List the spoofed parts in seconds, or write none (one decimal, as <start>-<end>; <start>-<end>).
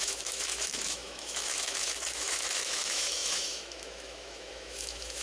0.0-5.2